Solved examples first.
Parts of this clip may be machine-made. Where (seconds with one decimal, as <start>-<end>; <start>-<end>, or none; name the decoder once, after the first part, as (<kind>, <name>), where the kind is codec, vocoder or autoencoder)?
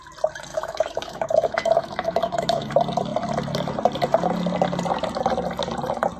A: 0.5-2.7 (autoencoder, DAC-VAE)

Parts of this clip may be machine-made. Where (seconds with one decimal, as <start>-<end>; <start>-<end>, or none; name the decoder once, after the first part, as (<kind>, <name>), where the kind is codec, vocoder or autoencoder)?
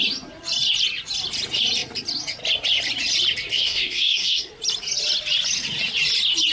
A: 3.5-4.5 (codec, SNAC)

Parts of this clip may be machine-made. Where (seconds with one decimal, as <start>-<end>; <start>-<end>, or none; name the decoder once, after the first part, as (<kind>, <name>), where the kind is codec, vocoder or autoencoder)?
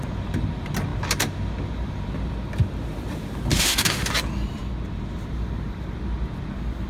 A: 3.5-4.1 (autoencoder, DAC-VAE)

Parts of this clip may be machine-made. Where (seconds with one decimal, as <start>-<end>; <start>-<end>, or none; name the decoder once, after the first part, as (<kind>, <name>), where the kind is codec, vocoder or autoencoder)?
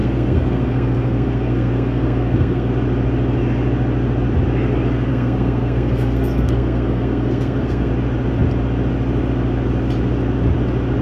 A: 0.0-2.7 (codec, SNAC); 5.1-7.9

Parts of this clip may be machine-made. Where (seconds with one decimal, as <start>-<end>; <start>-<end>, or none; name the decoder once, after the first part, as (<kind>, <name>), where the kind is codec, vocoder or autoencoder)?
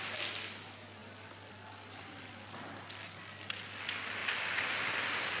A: none